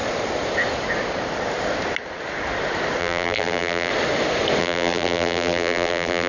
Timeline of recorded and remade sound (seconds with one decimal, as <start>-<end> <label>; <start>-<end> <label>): 0.0-3.0 recorded; 3.0-3.9 remade; 3.9-4.6 recorded; 4.6-6.3 remade